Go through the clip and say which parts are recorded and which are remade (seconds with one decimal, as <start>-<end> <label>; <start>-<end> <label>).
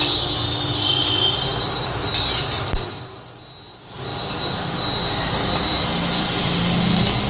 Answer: 0.0-1.5 recorded; 1.5-2.1 remade; 2.1-4.1 recorded; 4.1-5.5 remade; 5.5-7.3 recorded